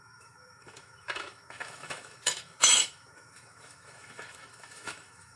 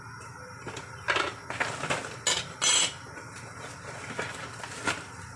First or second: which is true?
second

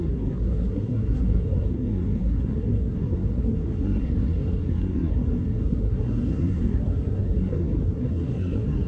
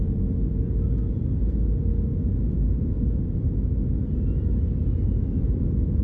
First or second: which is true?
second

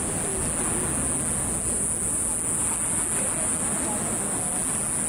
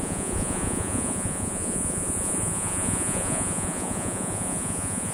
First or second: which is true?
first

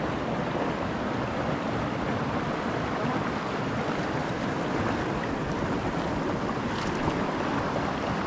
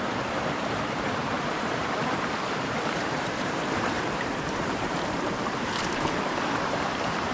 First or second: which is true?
first